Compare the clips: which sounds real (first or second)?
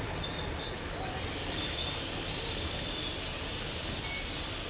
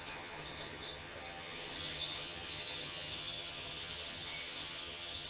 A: first